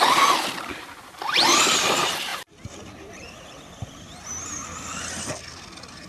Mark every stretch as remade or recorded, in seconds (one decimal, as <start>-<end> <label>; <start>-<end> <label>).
0.0-2.3 recorded; 2.3-4.0 remade; 4.0-6.1 recorded